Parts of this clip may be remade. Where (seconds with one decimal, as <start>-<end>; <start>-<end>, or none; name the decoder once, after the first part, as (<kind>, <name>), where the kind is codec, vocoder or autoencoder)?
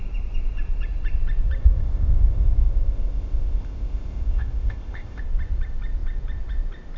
1.6-5.2 (codec, ZipCodec)